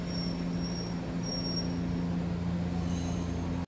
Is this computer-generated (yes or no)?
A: no